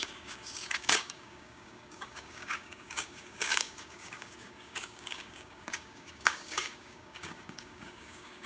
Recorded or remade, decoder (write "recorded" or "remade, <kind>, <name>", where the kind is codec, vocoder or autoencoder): remade, codec, DAC